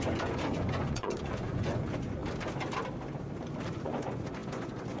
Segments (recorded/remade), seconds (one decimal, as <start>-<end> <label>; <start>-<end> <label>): 0.0-2.2 remade; 2.2-3.7 recorded; 3.7-5.0 remade